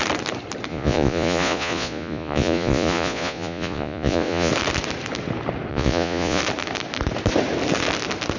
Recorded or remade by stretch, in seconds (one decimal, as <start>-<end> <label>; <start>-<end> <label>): 0.0-0.7 recorded; 0.7-4.5 remade; 4.5-5.7 recorded; 5.7-6.4 remade; 6.4-8.4 recorded